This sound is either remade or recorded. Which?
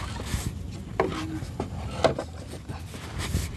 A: recorded